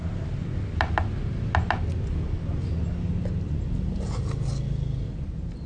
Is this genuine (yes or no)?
yes